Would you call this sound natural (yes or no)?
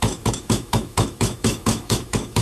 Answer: no